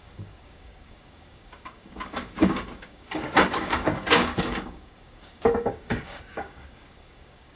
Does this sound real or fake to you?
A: fake